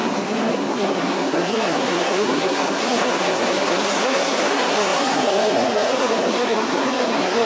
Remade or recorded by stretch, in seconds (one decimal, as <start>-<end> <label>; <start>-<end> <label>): 0.0-7.5 remade